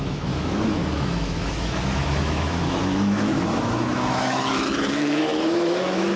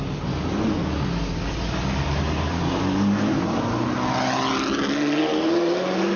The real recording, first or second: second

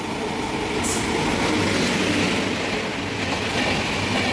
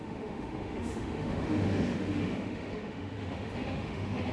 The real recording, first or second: first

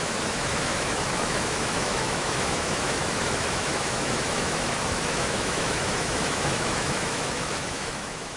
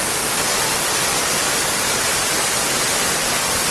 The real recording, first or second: second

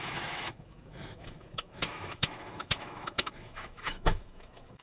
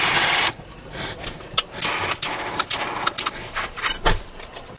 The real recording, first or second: second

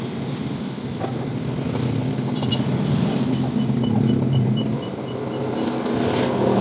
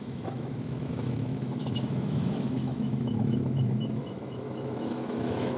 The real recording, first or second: first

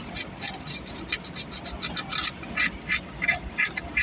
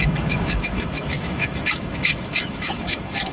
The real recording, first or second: first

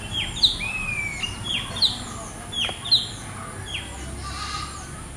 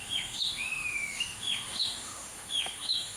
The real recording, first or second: first